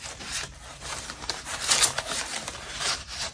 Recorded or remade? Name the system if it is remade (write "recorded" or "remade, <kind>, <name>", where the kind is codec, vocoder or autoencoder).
remade, vocoder, BigVGAN v2